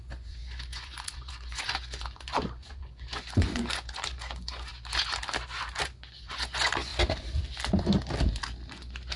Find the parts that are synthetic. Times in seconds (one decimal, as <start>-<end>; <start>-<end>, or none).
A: 0.0-4.7; 5.8-6.9; 8.7-9.2